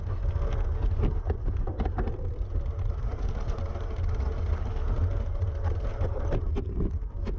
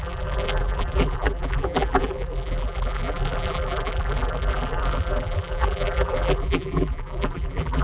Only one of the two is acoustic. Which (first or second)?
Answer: first